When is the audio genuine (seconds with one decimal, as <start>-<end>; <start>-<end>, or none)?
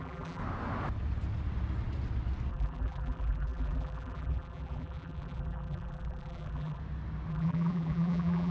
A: 0.4-2.5; 6.8-7.3